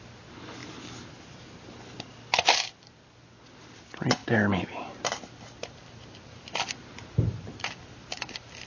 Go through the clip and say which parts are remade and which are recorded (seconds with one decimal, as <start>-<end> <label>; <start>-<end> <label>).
0.0-4.2 recorded; 4.2-8.7 remade